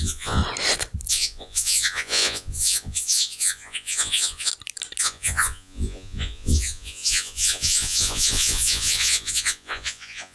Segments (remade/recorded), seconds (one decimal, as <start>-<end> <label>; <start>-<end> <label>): 0.0-0.4 remade; 0.4-1.1 recorded; 1.1-4.5 remade; 4.5-5.0 recorded; 5.0-10.3 remade